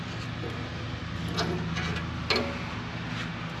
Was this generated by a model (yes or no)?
no